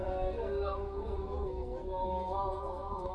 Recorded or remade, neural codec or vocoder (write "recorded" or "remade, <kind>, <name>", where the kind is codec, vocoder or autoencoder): remade, codec, SNAC